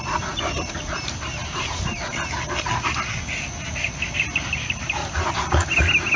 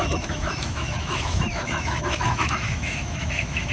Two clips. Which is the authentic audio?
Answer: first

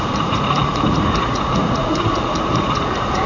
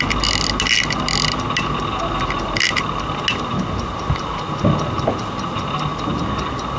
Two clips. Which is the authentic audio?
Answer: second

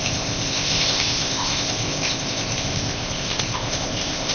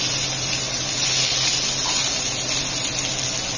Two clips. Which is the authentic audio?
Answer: second